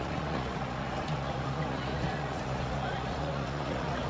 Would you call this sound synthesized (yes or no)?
yes